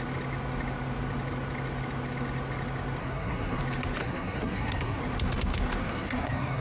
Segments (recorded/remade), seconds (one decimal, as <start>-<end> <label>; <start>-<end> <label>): 0.0-3.0 recorded; 3.0-3.6 remade; 3.6-4.0 recorded; 4.0-5.0 remade; 5.0-5.8 recorded; 5.8-6.6 remade